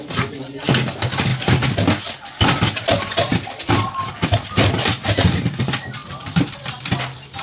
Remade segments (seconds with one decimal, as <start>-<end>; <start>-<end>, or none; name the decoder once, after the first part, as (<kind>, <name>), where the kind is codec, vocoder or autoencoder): 3.3-4.7 (vocoder, BigVGAN v2); 6.0-6.8